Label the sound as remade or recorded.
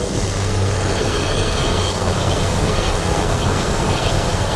remade